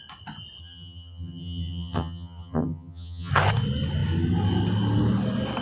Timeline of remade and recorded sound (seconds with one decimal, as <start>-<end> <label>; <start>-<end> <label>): 0.0-0.6 recorded; 0.6-3.3 remade; 3.3-5.6 recorded